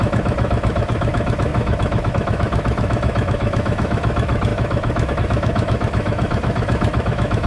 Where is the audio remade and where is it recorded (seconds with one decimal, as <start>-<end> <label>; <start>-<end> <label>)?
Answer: 0.0-7.5 remade